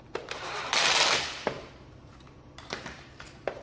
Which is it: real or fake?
fake